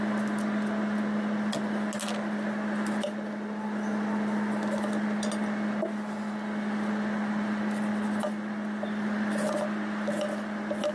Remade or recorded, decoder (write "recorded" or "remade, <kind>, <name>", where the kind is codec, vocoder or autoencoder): recorded